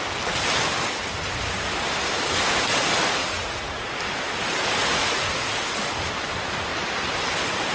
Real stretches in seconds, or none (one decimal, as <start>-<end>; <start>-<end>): 0.0-3.2; 4.0-4.6; 5.4-7.7